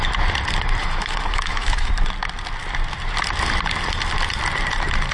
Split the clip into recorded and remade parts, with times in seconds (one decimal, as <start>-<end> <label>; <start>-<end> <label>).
0.0-0.8 recorded; 0.8-1.9 remade; 1.9-5.1 recorded

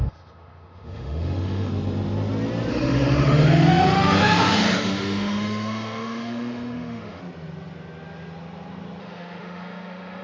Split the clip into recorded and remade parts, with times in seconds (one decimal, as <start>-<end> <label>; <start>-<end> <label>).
0.0-1.7 remade; 1.7-2.7 recorded; 2.7-7.2 remade; 7.2-9.0 recorded; 9.0-10.2 remade

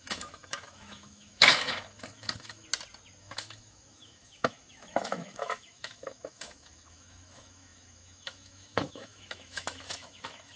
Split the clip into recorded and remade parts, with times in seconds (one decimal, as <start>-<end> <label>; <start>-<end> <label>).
0.0-2.7 remade; 2.7-3.2 recorded; 3.2-10.6 remade

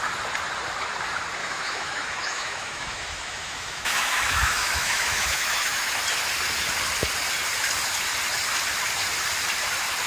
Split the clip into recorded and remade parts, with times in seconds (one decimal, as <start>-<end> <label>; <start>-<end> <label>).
0.0-1.4 recorded; 1.4-5.9 remade; 5.9-10.1 recorded

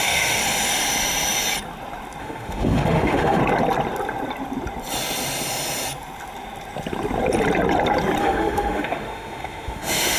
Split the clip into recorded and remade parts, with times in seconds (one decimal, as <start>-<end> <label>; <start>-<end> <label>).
0.0-0.4 remade; 0.4-2.2 recorded; 2.2-3.4 remade; 3.4-8.2 recorded; 8.2-10.2 remade

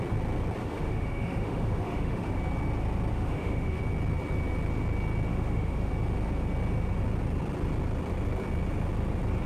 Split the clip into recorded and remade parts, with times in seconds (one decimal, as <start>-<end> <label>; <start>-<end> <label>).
0.0-0.6 recorded; 0.6-2.4 remade; 2.4-3.1 recorded; 3.1-3.8 remade; 3.8-5.3 recorded; 5.3-5.9 remade; 5.9-9.5 recorded

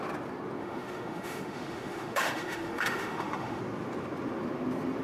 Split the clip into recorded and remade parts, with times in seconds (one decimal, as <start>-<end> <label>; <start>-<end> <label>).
0.0-0.6 recorded; 0.6-3.6 remade; 3.6-5.0 recorded

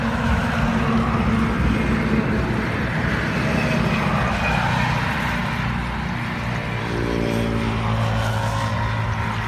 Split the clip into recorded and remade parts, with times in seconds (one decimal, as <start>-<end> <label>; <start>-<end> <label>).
0.0-0.5 remade; 0.5-9.5 recorded